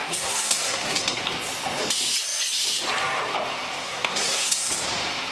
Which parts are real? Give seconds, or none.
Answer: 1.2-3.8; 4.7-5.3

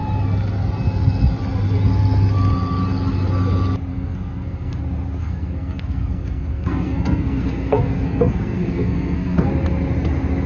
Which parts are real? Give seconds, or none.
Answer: 0.0-3.9; 4.8-5.2; 9.5-10.5

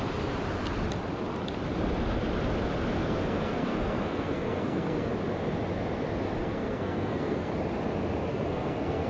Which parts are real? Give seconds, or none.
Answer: 0.0-3.0; 5.1-6.4; 7.5-8.3

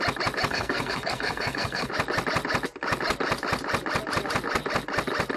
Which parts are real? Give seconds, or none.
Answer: 0.0-0.5; 1.9-5.4